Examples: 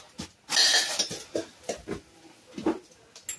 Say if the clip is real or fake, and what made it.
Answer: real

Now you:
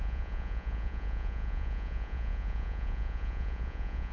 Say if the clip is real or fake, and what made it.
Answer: fake, vocoder, Vocos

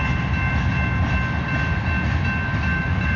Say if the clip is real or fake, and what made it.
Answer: real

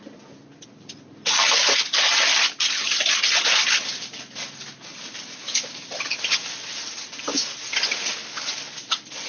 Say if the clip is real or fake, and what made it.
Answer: real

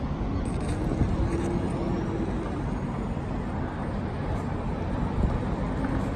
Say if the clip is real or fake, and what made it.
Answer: real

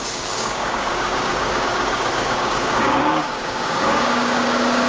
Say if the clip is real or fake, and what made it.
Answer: fake, codec, DAC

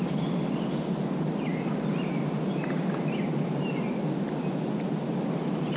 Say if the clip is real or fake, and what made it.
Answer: real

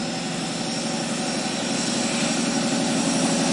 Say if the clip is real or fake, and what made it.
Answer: real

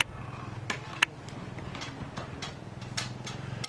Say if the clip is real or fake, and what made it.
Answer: real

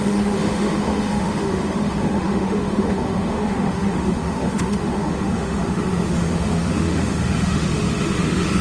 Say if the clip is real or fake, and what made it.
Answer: fake, autoencoder, DAC-VAE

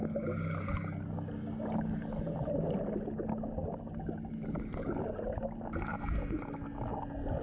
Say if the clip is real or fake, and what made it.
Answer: real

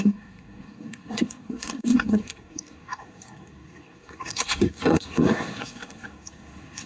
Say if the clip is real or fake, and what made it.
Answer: fake, codec, SNAC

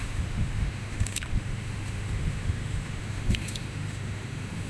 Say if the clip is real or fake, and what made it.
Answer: fake, autoencoder, DAC-VAE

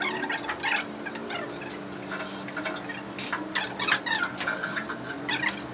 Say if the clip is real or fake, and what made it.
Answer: real